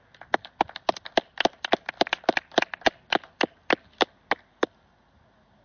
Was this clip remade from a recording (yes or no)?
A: no